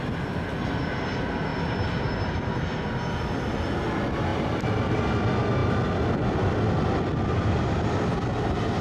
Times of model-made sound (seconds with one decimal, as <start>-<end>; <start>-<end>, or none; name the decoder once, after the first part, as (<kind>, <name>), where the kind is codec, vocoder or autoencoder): 1.5-2.0 (vocoder, BigVGAN v2); 4.3-5.0